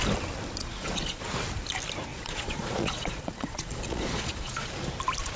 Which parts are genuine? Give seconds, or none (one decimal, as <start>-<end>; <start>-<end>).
0.0-0.6; 1.2-2.1; 4.7-5.4